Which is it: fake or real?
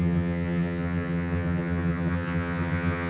fake